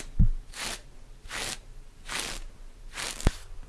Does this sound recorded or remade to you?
recorded